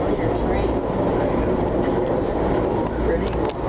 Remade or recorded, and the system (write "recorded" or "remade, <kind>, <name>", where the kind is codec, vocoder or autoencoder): recorded